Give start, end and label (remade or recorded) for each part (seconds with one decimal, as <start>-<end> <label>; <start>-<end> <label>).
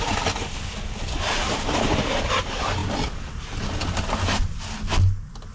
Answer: 0.0-5.5 recorded